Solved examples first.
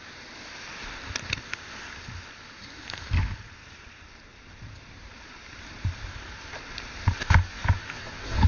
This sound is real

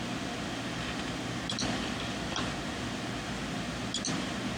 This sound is real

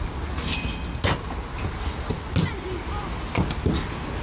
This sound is real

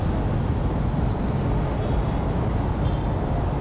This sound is real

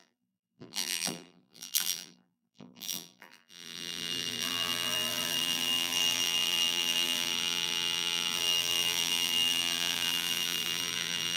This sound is fake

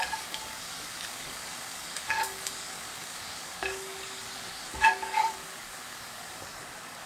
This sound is fake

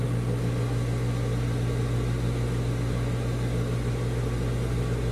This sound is real